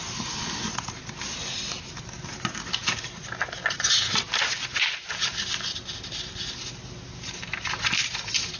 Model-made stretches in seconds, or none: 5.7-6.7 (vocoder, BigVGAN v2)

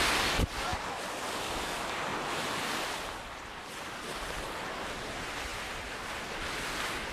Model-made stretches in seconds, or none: 2.1-3.8 (vocoder, BigVGAN v2); 5.5-6.4

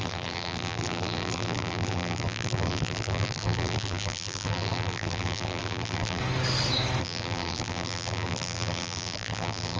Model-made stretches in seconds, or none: 0.0-6.2 (vocoder, BigVGAN v2); 7.0-9.8

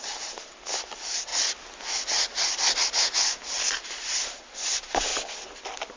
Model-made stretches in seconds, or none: 0.0-1.3 (vocoder, BigVGAN v2); 3.7-5.1

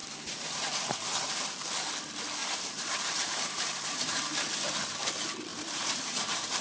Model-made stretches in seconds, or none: 0.0-1.3 (vocoder, BigVGAN v2); 2.4-4.2; 5.5-6.6

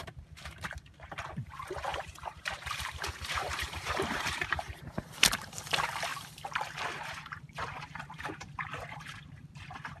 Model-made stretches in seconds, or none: 0.0-6.1 (vocoder, BigVGAN v2); 6.8-10.0

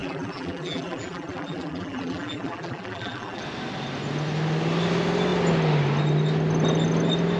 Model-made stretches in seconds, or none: 0.0-3.4 (vocoder, BigVGAN v2)

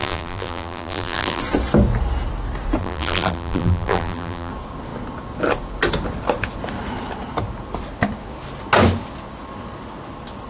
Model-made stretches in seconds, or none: 0.0-1.4 (vocoder, BigVGAN v2); 2.8-4.5